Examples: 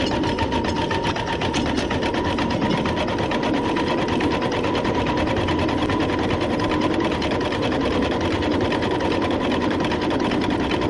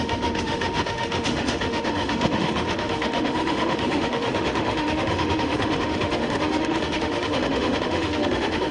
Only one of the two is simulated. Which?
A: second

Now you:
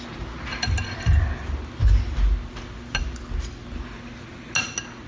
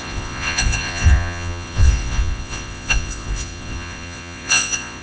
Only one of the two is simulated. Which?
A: second